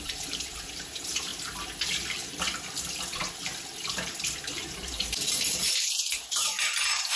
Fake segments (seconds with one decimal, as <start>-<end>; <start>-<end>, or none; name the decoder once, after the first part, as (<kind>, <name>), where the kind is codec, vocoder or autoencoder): 0.0-1.3 (vocoder, BigVGAN v2); 4.6-7.2